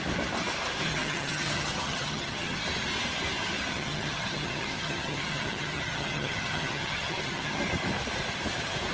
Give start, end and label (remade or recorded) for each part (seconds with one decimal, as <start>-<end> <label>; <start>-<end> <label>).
0.0-0.9 recorded; 0.9-2.6 remade; 2.6-3.7 recorded; 3.7-7.6 remade; 7.6-8.9 recorded